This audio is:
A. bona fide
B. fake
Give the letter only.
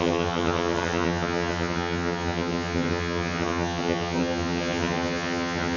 B